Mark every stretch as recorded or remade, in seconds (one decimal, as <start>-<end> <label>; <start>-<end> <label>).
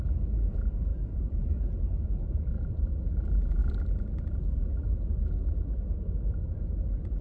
0.0-0.9 recorded; 0.9-1.4 remade; 1.4-7.2 recorded